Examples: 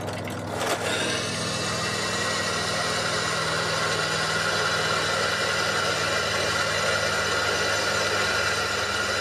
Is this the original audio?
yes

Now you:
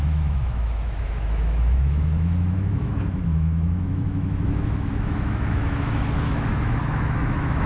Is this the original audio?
no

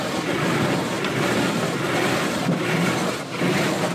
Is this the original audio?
yes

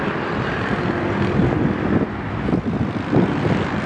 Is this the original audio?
yes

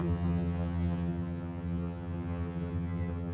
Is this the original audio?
no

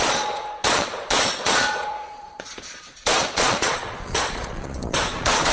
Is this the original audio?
no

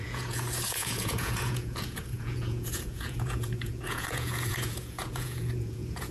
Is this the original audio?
no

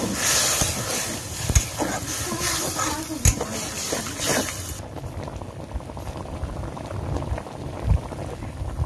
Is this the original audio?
yes